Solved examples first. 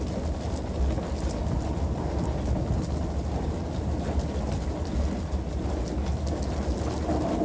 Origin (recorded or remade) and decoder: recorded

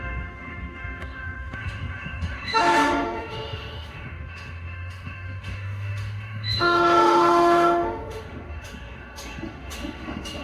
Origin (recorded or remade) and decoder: remade, autoencoder, DAC-VAE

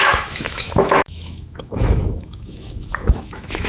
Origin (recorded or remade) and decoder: remade, autoencoder, DAC-VAE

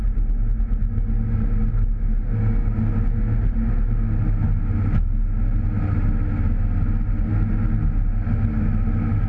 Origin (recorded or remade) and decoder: recorded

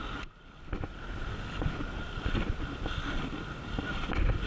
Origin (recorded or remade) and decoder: recorded